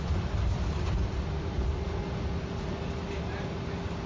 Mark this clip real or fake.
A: real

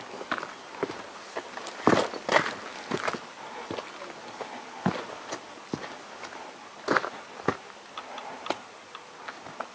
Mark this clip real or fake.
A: real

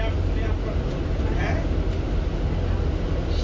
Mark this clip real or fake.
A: real